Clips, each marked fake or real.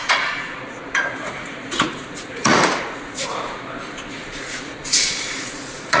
fake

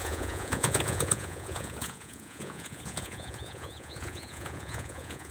fake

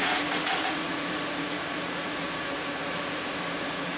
fake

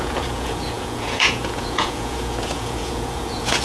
fake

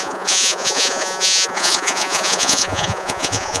fake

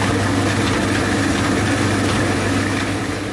real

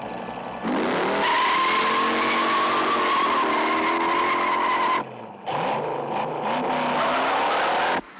real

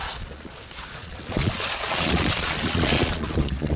fake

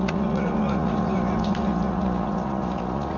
fake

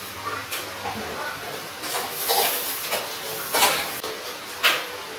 real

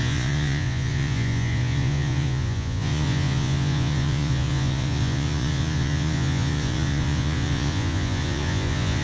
fake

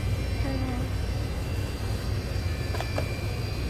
real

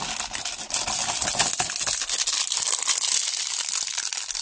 real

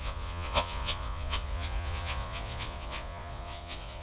fake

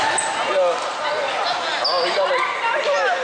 real